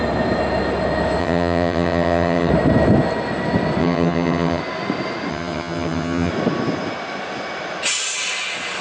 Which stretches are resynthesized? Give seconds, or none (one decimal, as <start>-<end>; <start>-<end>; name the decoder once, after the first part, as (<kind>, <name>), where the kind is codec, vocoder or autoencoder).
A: 1.2-2.5 (vocoder, HiFi-GAN); 3.8-4.6; 5.3-6.3